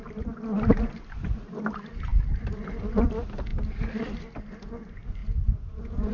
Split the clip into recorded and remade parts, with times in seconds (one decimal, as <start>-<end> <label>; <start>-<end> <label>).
0.0-5.2 recorded; 5.2-6.1 remade